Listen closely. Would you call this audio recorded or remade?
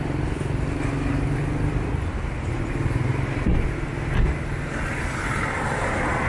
recorded